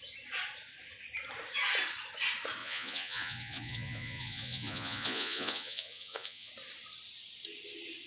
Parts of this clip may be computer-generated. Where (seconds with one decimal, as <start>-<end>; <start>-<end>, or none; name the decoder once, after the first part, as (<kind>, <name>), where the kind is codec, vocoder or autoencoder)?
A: 2.6-6.5 (vocoder, Vocos)